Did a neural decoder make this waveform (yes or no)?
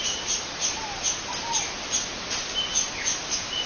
no